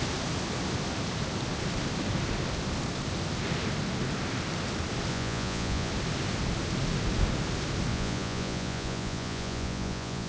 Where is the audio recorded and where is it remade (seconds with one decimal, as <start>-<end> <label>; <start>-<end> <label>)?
0.0-5.1 recorded; 5.1-5.9 remade; 5.9-7.9 recorded; 7.9-10.3 remade